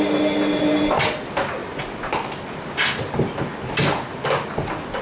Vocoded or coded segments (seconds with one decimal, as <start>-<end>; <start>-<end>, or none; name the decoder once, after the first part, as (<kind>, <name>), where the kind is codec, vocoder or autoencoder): none